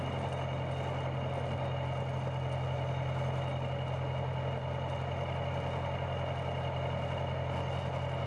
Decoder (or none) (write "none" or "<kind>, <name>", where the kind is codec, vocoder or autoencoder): none